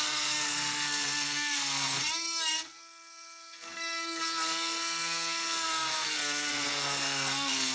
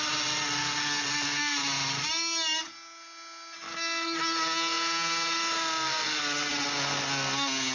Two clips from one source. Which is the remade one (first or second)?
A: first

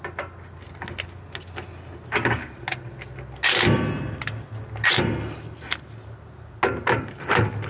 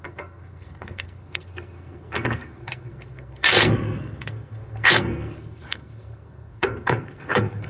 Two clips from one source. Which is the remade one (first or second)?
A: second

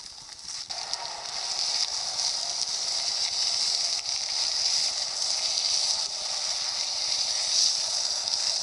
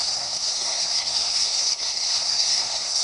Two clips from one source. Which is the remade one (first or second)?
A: second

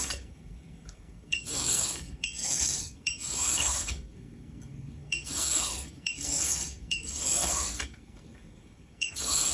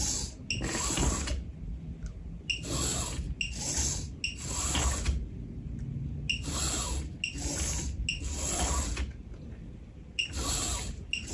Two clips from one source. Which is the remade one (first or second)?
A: first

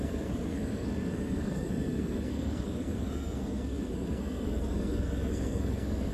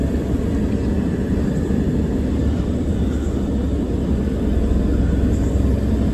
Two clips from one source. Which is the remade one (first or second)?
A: first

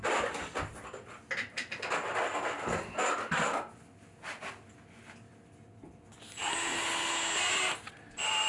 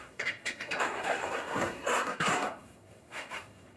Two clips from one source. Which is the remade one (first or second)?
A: second